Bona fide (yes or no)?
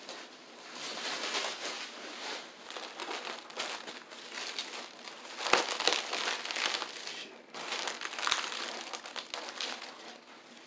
yes